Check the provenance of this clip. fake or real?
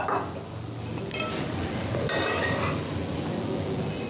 real